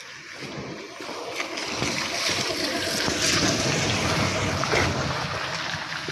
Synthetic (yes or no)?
no